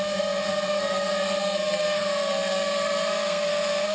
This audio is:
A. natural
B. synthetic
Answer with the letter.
B